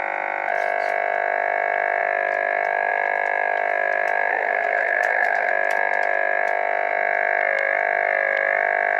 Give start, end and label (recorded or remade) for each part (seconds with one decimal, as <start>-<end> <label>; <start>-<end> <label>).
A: 0.0-4.3 recorded; 4.3-5.5 remade; 5.5-9.0 recorded